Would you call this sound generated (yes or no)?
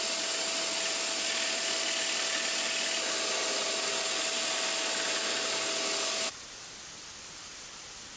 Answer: no